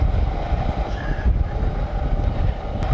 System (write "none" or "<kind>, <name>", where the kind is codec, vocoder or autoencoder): none